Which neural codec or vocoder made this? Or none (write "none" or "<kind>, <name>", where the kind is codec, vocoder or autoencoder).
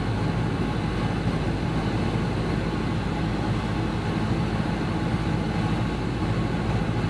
none